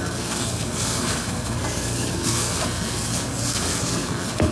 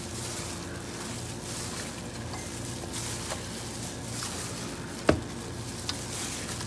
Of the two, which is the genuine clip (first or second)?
second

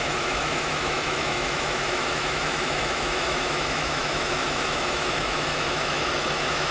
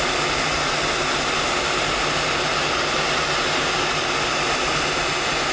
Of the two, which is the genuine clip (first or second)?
second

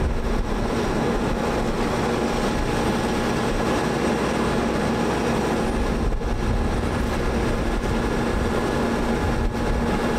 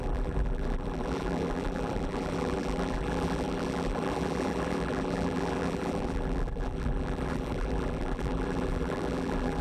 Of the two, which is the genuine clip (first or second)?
first